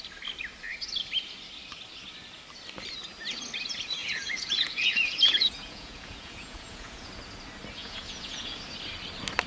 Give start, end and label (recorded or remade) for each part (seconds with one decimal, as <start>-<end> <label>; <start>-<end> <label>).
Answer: 0.0-4.0 recorded; 4.0-7.1 remade; 7.1-7.8 recorded; 7.8-8.6 remade; 8.6-9.5 recorded